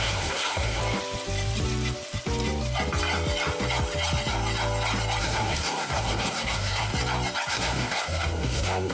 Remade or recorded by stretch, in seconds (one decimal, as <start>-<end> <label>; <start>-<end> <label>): 0.0-0.8 remade; 0.8-5.2 recorded; 5.2-6.9 remade; 6.9-7.5 recorded; 7.5-8.9 remade

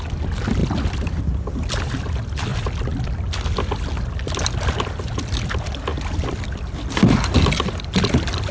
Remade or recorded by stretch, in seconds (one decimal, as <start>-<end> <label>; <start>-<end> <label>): 0.0-2.5 recorded; 2.5-3.1 remade; 3.1-8.5 recorded

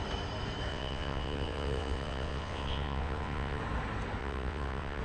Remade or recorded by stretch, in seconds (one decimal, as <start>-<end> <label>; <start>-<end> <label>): 0.0-0.7 recorded; 0.7-3.6 remade; 3.6-4.2 recorded; 4.2-5.0 remade

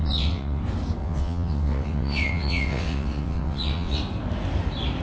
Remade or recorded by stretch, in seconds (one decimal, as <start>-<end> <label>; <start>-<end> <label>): 0.0-0.6 remade; 0.6-1.0 recorded; 1.0-4.0 remade; 4.0-5.0 recorded

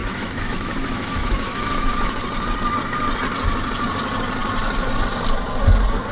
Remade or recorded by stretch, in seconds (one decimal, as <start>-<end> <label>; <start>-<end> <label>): 0.0-2.1 remade; 2.1-6.1 recorded